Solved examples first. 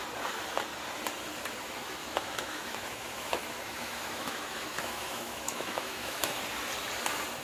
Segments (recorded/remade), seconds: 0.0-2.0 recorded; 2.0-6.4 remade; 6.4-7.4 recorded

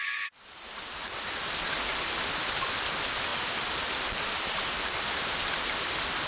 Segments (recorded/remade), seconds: 0.0-6.3 recorded

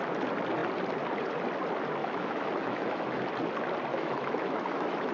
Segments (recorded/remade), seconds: 0.0-2.0 recorded; 2.0-3.2 remade; 3.2-3.9 recorded; 3.9-5.1 remade

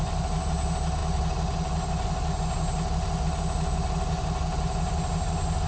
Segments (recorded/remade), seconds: 0.0-5.7 recorded